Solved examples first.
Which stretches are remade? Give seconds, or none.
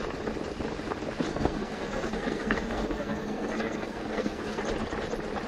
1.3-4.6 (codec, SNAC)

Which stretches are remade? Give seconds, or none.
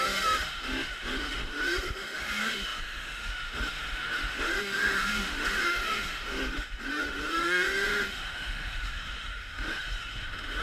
0.0-10.6 (autoencoder, DAC-VAE)